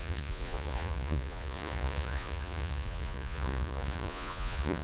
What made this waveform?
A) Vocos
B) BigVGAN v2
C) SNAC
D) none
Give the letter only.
A